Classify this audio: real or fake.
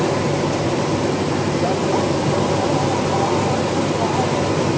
real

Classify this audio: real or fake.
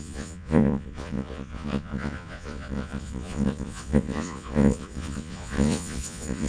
fake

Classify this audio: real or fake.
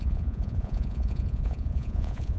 fake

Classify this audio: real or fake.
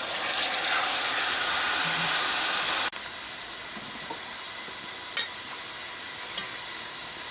real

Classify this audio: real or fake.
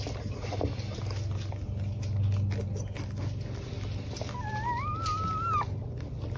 real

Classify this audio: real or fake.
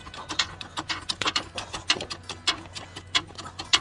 fake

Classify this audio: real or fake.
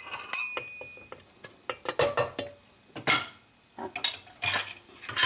real